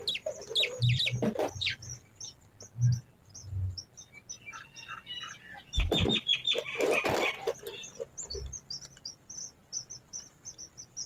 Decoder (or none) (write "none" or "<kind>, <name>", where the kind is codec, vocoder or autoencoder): none